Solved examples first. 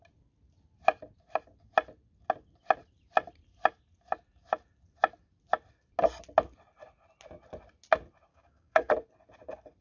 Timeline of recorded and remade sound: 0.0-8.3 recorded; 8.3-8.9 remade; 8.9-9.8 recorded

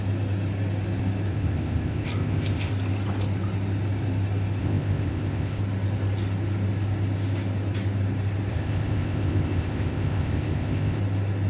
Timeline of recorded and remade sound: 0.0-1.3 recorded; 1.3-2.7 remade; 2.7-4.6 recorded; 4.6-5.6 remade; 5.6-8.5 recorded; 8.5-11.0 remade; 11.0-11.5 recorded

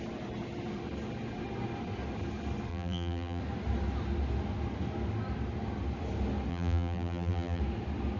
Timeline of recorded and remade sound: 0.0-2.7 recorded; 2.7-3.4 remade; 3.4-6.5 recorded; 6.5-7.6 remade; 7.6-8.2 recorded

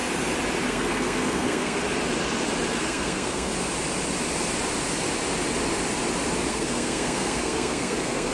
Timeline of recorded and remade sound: 0.0-0.7 recorded; 0.7-1.8 remade; 1.8-2.7 recorded; 2.7-3.5 remade; 3.5-6.5 recorded; 6.5-8.3 remade

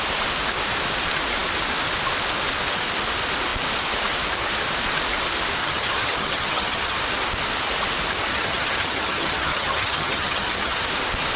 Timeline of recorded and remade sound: 0.0-5.6 recorded; 5.6-7.0 remade; 7.0-8.3 recorded; 8.3-10.8 remade; 10.8-11.4 recorded